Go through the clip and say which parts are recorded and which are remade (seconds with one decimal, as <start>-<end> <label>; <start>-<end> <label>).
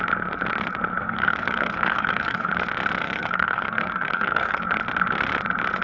0.0-1.0 recorded; 1.0-2.5 remade; 2.5-3.0 recorded; 3.0-4.6 remade; 4.6-5.8 recorded